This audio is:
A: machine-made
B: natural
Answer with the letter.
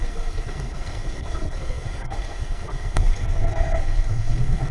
A